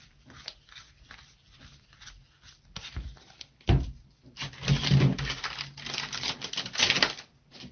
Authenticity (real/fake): real